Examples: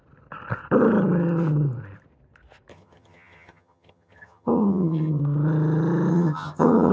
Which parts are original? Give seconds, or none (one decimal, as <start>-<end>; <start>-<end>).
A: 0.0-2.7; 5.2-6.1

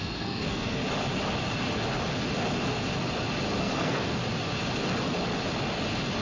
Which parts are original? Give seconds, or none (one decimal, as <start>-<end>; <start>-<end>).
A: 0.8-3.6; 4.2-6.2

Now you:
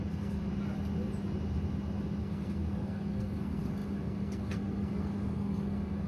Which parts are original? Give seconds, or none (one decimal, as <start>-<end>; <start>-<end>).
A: 0.5-2.2

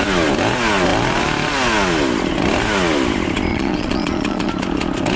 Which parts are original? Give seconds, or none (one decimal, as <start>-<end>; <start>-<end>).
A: 0.0-3.5; 4.5-5.2

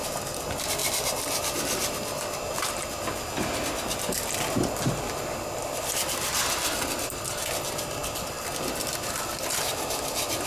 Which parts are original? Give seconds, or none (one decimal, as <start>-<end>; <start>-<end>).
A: 0.0-10.5

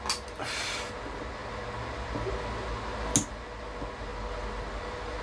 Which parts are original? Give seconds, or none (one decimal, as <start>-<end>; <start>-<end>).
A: 0.0-5.2

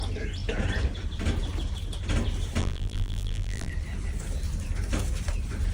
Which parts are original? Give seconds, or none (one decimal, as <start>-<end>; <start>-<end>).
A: 0.0-2.6; 3.7-5.7